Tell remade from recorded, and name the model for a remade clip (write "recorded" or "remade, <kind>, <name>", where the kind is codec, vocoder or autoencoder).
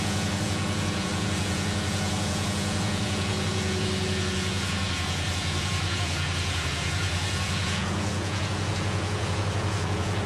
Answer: remade, vocoder, Vocos